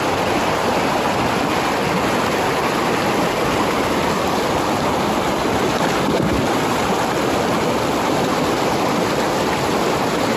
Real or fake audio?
real